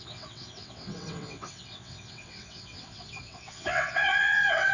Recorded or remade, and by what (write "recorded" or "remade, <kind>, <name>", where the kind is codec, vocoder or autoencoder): remade, vocoder, WaveNeXt